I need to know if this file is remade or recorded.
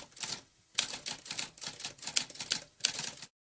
recorded